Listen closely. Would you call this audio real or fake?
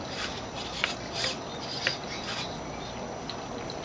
real